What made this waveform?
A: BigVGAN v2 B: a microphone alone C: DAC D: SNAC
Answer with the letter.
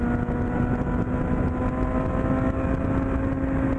B